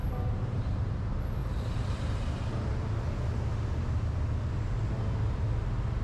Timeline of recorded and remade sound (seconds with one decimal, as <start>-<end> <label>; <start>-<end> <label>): 0.0-0.9 remade; 0.9-1.4 recorded; 1.4-3.1 remade; 3.1-6.0 recorded